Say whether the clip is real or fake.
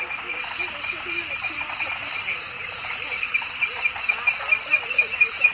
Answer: real